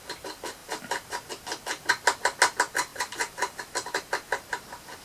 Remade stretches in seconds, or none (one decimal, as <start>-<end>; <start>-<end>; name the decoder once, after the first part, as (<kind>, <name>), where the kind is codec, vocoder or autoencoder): 0.6-1.3 (vocoder, BigVGAN v2); 2.9-3.6